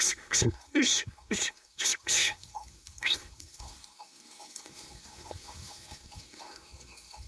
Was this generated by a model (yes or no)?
yes